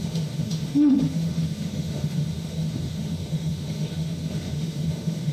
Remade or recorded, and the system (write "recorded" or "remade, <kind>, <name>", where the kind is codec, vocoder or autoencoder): remade, autoencoder, DAC-VAE